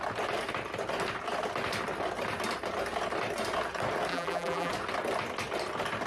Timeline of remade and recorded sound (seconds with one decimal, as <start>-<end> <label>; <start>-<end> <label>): 0.0-4.1 recorded; 4.1-4.7 remade; 4.7-6.1 recorded